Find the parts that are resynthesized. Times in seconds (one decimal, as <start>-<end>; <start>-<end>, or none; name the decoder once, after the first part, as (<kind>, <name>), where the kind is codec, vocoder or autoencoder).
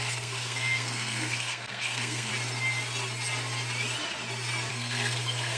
0.0-2.3 (codec, SNAC); 4.7-5.6